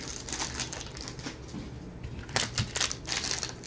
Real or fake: real